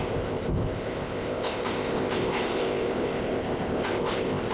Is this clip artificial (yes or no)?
yes